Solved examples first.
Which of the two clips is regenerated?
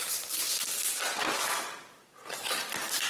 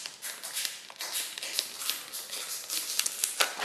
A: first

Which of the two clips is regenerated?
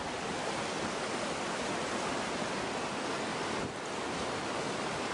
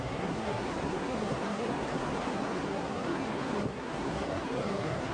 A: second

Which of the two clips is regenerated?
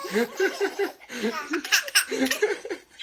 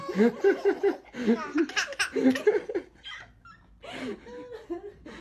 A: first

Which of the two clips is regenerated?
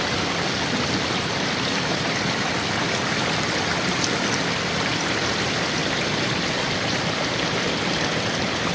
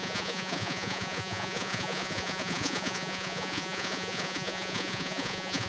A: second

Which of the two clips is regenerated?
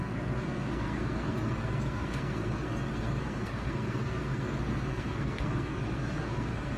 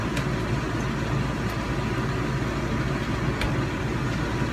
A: first